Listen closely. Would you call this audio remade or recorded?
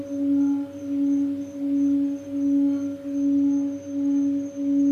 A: recorded